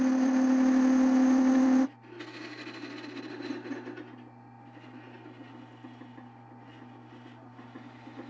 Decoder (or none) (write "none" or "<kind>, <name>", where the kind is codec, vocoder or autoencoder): none